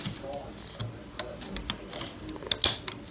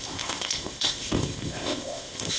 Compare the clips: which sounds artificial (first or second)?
second